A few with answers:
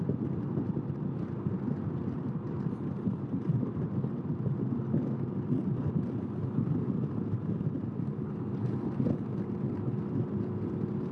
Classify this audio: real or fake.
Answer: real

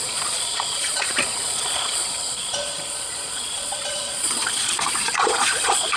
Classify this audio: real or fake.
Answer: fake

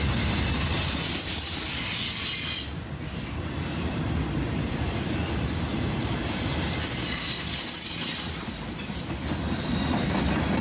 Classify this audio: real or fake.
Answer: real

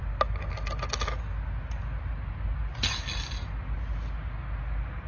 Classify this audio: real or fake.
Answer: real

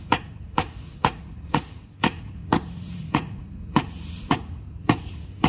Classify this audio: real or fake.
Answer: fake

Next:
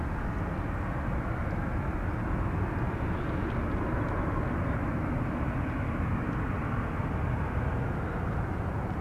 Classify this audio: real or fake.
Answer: real